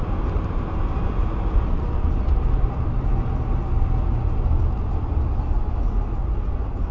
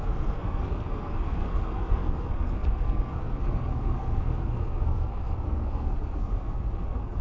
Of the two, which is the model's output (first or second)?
second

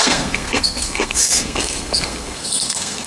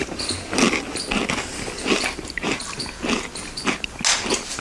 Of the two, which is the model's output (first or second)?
first